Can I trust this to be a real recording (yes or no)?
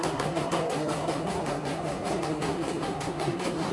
no